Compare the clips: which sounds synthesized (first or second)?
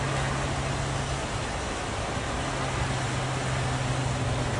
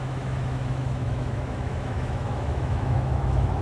second